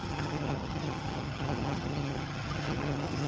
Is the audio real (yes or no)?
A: no